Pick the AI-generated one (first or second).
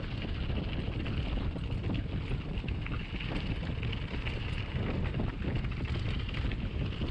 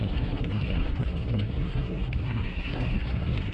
second